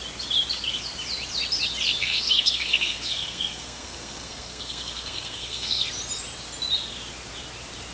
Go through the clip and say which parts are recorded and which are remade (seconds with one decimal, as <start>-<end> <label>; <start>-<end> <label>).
0.0-2.0 recorded; 2.0-5.9 remade; 5.9-7.9 recorded

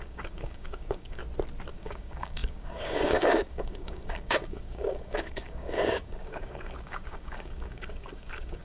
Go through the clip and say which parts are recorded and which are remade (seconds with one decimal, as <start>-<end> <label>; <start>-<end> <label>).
0.0-1.2 remade; 1.2-1.7 recorded; 1.7-8.6 remade

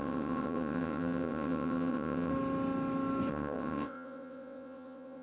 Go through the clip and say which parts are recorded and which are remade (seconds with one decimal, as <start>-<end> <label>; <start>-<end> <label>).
0.0-2.3 remade; 2.3-3.3 recorded; 3.3-5.2 remade

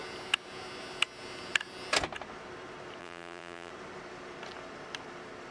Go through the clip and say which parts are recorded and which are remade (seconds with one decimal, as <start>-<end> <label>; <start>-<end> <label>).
0.0-3.0 recorded; 3.0-3.7 remade; 3.7-5.5 recorded

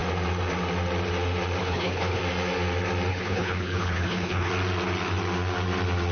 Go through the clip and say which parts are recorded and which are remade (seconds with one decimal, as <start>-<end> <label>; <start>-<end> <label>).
0.0-1.6 recorded; 1.6-2.2 remade; 2.2-3.1 recorded; 3.1-4.5 remade; 4.5-6.1 recorded

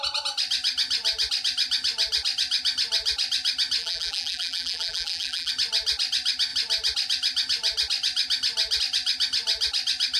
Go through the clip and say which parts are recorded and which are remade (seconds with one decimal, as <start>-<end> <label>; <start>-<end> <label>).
0.0-3.8 recorded; 3.8-5.5 remade; 5.5-10.2 recorded